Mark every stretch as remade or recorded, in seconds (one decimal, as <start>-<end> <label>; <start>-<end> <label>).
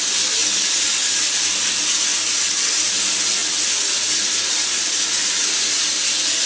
0.0-6.5 recorded